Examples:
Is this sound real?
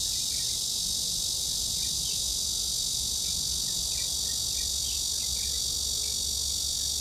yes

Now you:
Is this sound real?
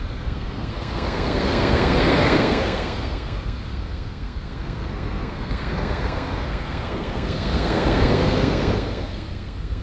no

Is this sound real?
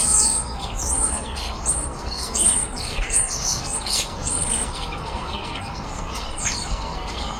no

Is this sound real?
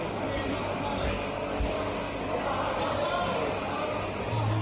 yes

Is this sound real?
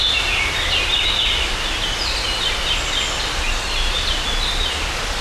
yes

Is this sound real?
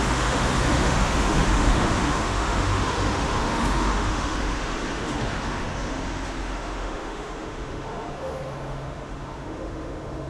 no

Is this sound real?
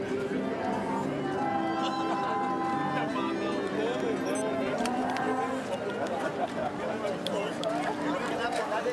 yes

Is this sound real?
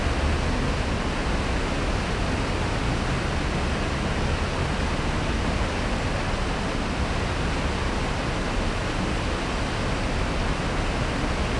yes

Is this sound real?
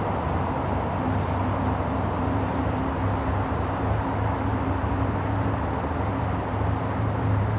no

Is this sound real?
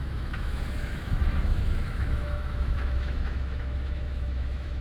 no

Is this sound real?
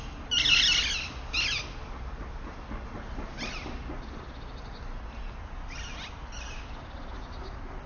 yes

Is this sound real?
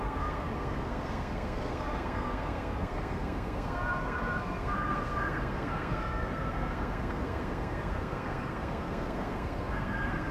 no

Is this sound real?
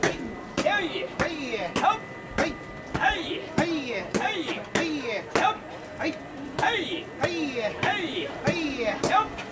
yes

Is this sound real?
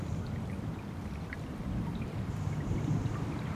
no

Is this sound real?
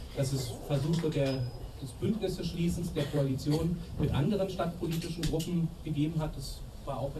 no